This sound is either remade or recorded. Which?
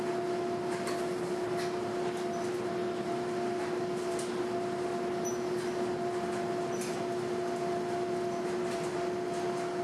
recorded